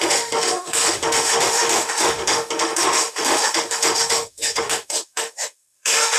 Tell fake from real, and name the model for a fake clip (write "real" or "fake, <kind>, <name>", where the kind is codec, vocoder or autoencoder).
fake, autoencoder, DAC-VAE